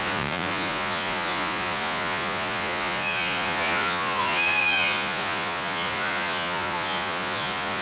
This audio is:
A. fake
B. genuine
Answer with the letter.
A